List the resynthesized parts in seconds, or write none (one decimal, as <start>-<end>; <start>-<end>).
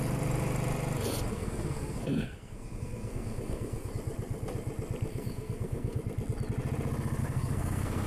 1.3-3.9; 5.1-6.0; 7.2-8.1